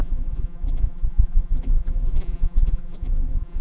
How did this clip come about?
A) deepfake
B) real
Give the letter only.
A